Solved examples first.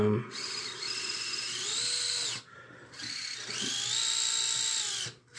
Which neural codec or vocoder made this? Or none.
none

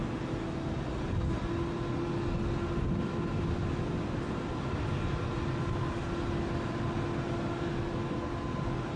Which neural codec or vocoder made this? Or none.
none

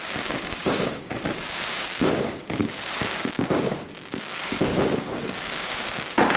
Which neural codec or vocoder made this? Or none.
codec, DAC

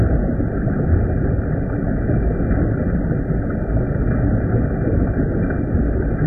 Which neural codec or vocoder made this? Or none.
none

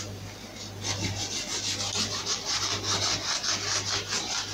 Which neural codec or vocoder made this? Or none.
none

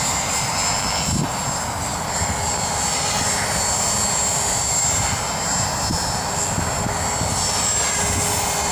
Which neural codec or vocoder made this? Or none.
none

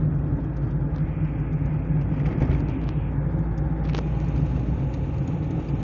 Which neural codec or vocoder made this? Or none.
none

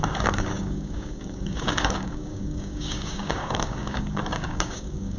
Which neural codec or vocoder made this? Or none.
codec, DAC